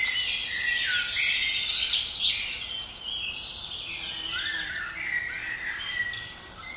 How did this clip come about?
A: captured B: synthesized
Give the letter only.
A